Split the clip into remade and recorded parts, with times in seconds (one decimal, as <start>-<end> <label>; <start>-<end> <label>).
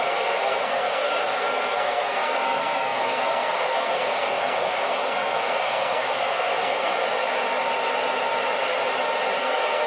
0.0-6.9 remade; 6.9-9.4 recorded; 9.4-9.9 remade